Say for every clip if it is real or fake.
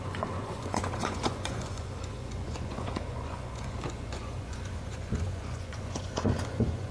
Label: fake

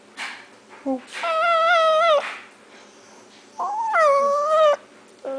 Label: real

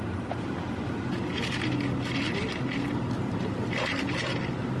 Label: real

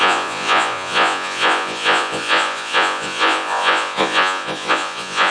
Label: fake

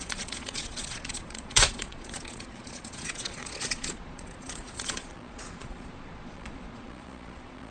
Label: fake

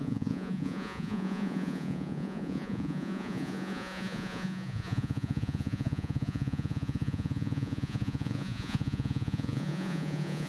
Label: fake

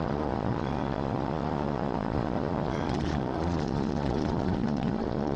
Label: fake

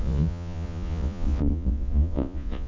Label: fake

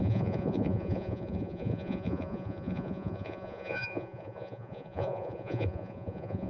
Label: fake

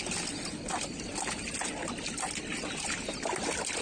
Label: real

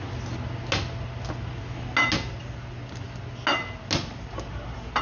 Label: real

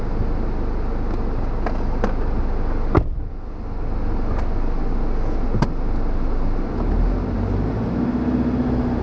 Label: real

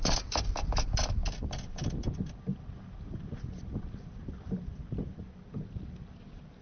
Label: real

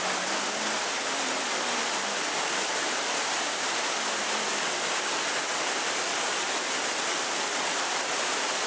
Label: real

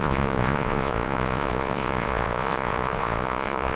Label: fake